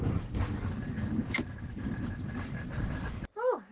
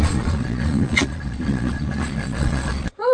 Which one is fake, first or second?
second